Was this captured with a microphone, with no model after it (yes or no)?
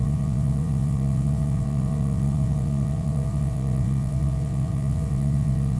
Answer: no